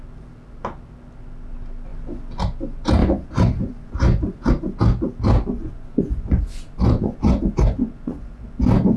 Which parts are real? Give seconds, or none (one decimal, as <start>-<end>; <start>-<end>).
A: 0.0-3.0; 4.5-5.6; 8.4-9.0